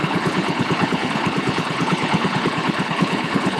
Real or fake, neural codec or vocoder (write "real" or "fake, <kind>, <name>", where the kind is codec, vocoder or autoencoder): fake, codec, HILCodec